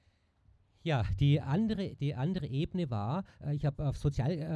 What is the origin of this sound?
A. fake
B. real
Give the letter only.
A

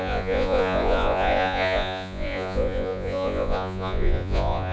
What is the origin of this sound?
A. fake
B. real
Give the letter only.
A